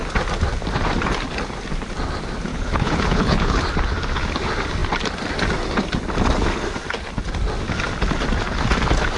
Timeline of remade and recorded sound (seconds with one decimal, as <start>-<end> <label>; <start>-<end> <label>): 0.0-2.5 recorded; 2.5-3.6 remade; 3.6-9.2 recorded